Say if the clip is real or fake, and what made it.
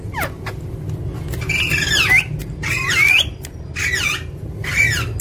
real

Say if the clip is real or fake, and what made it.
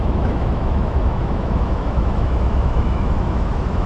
fake, autoencoder, DAC-VAE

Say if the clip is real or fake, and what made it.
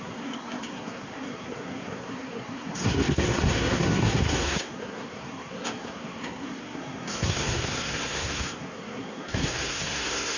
fake, codec, SNAC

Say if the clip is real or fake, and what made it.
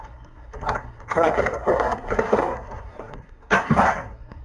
fake, codec, SNAC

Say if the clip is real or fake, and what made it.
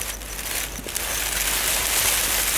real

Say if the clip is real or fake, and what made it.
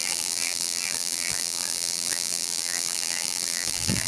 fake, vocoder, BigVGAN v2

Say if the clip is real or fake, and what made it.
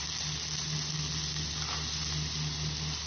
real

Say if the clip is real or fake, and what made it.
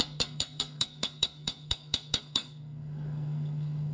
fake, codec, SNAC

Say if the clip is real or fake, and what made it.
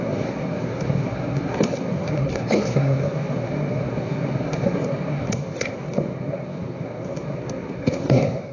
fake, codec, SNAC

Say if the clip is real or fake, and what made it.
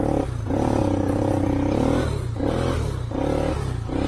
real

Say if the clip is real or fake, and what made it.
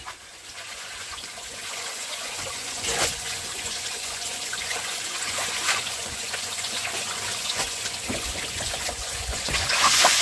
fake, vocoder, Vocos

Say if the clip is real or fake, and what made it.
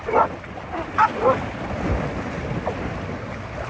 real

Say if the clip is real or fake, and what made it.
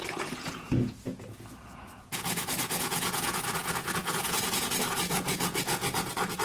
fake, vocoder, Vocos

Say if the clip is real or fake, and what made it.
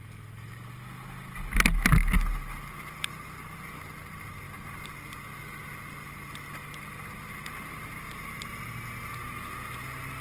real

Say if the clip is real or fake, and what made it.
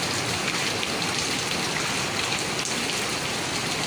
real